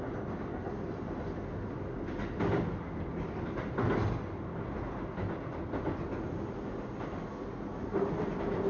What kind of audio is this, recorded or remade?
recorded